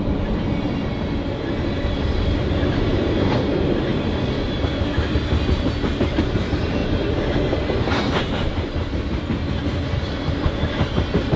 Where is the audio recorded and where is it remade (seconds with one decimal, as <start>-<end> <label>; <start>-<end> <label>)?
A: 0.0-11.4 recorded